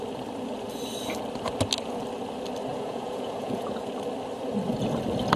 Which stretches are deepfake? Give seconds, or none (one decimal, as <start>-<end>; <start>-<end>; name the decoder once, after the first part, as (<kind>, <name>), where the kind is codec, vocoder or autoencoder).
2.7-3.9 (vocoder, Vocos)